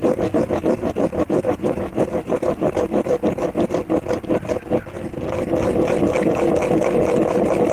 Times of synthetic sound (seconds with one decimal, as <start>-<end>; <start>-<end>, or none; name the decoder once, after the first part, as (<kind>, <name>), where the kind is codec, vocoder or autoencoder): none